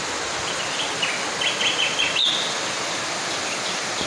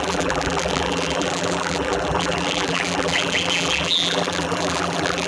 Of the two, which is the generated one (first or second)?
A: second